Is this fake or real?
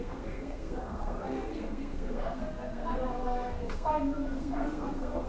fake